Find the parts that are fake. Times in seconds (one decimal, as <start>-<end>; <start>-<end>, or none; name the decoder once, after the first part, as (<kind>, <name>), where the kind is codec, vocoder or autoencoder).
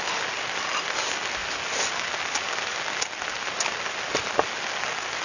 none